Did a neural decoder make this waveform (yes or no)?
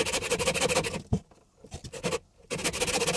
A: no